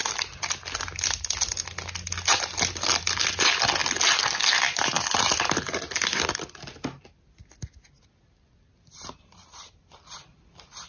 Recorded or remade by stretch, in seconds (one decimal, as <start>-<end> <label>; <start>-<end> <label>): 0.0-2.7 recorded; 2.7-3.8 remade; 3.8-8.9 recorded; 8.9-10.9 remade